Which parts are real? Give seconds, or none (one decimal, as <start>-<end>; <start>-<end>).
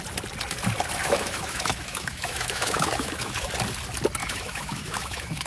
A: 0.0-1.0; 3.5-4.2